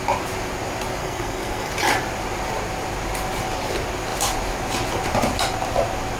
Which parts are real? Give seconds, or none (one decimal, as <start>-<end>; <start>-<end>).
0.0-1.0; 1.7-6.2